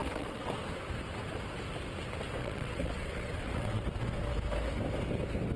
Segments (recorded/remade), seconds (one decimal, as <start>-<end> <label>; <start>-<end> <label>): 0.0-0.5 remade; 0.5-2.4 recorded; 2.4-3.8 remade; 3.8-5.6 recorded